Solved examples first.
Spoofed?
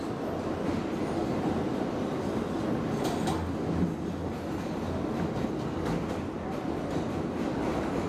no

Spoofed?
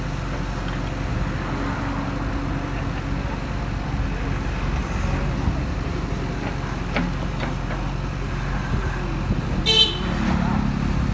no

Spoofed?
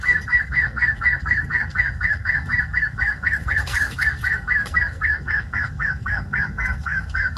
yes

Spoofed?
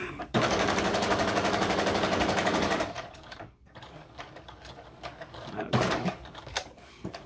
yes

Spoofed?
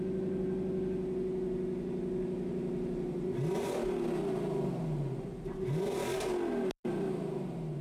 no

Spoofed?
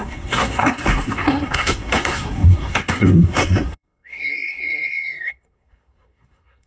yes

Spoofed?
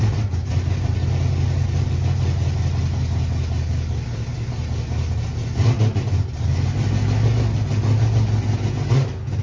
no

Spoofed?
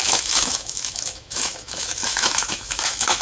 yes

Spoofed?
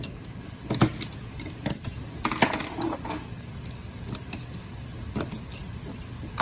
no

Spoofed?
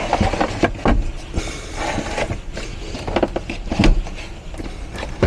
no